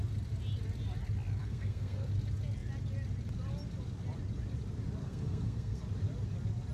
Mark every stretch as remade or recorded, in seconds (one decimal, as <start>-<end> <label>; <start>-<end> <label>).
0.0-1.4 recorded; 1.4-2.1 remade; 2.1-5.0 recorded; 5.0-5.8 remade; 5.8-6.7 recorded